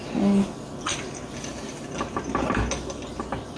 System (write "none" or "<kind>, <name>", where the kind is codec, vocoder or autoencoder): none